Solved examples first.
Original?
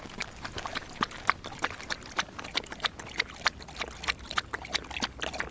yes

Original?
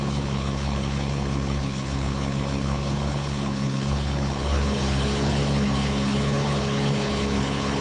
no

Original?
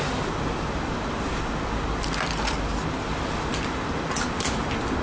yes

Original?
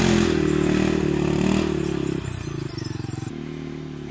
yes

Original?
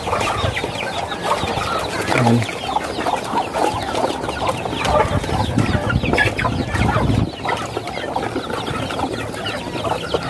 yes